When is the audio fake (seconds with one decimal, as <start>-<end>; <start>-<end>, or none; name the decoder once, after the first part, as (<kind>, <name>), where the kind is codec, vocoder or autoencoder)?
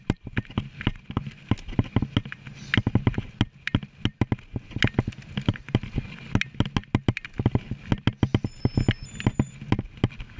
none